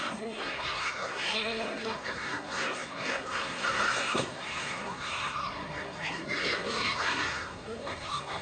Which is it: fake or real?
fake